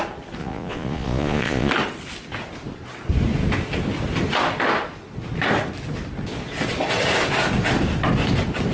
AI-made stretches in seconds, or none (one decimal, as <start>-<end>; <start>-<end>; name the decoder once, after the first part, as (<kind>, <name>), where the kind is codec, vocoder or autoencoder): 0.4-1.7 (vocoder, Vocos)

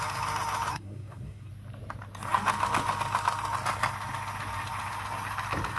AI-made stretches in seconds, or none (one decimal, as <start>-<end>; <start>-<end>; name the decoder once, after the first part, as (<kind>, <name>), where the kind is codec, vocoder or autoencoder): 0.7-1.5 (codec, SNAC)

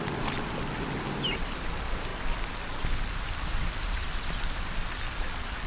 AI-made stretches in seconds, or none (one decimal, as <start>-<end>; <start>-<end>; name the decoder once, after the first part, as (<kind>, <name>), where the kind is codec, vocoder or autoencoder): none

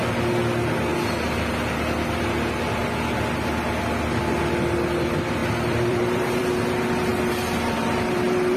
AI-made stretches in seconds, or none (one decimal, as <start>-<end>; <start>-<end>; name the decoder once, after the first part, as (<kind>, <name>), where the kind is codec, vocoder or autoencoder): 5.4-6.4 (vocoder, BigVGAN v2); 7.1-8.6

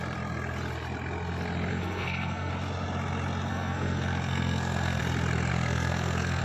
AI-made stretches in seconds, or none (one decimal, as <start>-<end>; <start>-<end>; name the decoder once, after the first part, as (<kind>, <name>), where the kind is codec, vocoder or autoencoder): 1.7-2.5 (codec, SNAC); 3.5-5.0; 5.5-6.4

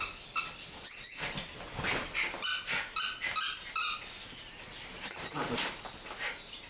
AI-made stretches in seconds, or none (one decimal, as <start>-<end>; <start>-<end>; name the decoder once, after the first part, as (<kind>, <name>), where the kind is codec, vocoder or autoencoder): none

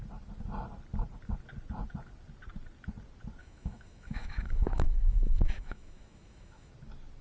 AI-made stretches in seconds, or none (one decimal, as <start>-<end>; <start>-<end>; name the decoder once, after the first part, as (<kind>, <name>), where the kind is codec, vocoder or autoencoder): 3.4-6.7 (autoencoder, DAC-VAE)